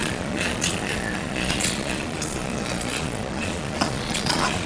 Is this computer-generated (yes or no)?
yes